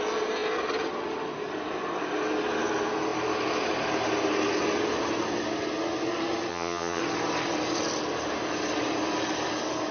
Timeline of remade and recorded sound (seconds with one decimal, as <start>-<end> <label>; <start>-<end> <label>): 0.0-6.5 recorded; 6.5-7.0 remade; 7.0-9.9 recorded